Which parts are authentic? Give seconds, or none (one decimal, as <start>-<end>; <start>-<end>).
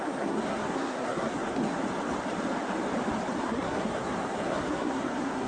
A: 1.8-3.4